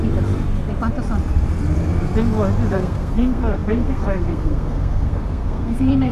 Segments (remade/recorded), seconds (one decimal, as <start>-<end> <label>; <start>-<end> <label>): 0.0-2.7 recorded; 2.7-6.1 remade